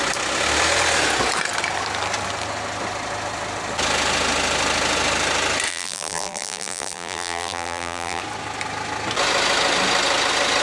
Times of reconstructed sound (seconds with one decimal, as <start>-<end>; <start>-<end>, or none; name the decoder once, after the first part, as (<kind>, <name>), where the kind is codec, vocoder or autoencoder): 5.7-8.2 (vocoder, BigVGAN v2)

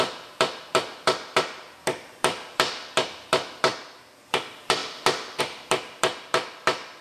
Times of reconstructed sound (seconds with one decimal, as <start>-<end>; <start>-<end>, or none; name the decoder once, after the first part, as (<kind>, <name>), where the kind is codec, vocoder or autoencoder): 0.0-4.8 (vocoder, BigVGAN v2); 5.4-7.0